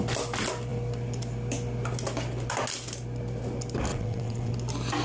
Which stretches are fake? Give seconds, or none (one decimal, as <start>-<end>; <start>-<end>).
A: 3.9-4.5